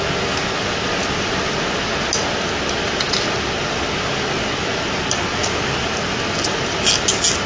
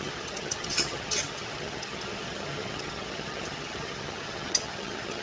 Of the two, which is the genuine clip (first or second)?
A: first